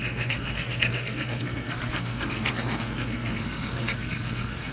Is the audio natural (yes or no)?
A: no